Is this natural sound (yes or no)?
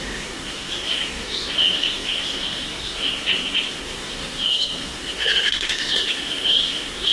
no